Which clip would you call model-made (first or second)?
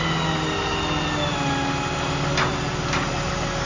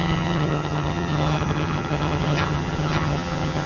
second